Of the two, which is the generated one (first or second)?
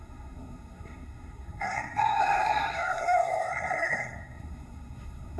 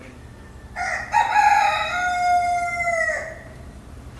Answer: first